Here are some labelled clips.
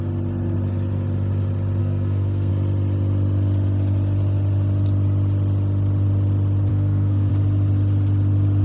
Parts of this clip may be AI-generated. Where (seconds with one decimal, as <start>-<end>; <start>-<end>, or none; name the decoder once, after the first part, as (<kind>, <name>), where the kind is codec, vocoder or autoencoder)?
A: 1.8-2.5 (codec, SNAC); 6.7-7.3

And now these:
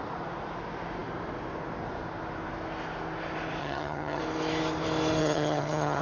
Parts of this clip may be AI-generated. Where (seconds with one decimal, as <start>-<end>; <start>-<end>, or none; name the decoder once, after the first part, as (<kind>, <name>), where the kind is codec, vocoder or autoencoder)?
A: 3.6-4.2 (vocoder, HiFi-GAN); 5.2-6.0

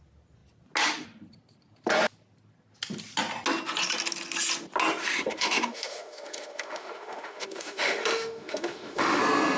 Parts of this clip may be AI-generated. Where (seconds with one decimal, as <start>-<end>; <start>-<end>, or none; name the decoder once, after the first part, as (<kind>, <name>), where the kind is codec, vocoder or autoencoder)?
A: 5.0-9.2 (autoencoder, DAC-VAE)

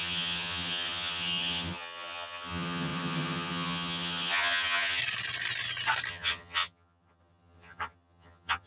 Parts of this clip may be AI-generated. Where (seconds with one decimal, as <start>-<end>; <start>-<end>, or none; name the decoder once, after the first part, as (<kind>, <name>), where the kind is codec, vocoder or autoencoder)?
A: 0.0-5.0 (vocoder, HiFi-GAN); 6.1-8.7

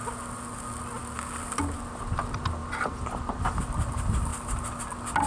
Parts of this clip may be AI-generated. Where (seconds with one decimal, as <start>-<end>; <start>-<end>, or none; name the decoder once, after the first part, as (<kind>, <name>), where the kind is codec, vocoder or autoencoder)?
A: none

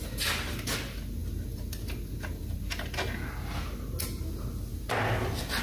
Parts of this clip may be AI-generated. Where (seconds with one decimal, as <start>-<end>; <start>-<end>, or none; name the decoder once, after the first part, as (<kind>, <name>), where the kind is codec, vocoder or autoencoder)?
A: none

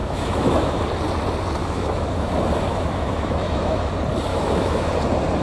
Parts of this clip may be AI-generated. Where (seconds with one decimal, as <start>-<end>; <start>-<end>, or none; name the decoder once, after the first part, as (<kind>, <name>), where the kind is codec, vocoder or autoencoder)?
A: 0.0-0.8 (autoencoder, DAC-VAE); 1.6-2.3; 2.7-3.9; 4.3-4.9